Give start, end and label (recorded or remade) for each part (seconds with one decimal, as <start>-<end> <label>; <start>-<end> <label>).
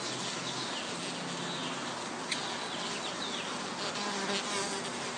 0.0-5.2 recorded